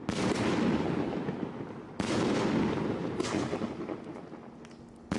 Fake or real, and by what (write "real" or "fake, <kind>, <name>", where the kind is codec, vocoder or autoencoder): real